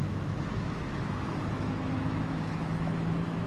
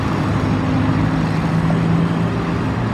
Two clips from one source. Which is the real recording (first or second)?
second